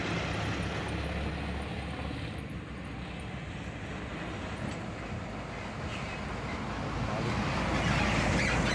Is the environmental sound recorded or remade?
recorded